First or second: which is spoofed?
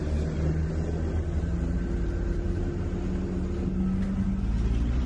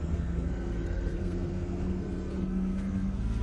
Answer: second